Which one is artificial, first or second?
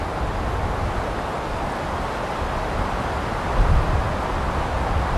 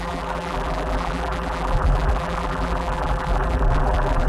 second